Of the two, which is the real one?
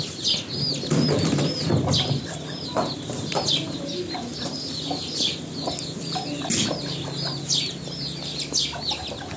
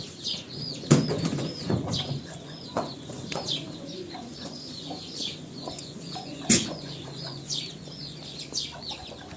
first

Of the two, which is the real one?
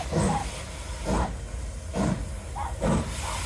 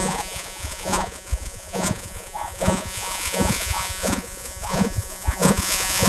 first